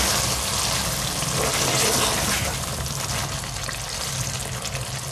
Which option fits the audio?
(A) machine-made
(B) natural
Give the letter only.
B